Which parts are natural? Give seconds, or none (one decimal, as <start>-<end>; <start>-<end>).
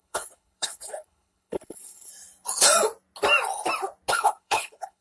2.1-4.1